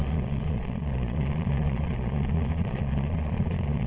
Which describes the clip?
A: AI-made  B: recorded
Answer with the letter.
A